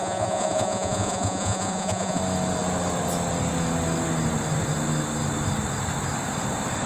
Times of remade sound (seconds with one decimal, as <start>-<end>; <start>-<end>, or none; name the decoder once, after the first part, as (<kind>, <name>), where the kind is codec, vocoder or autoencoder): 0.0-2.2 (vocoder, Vocos)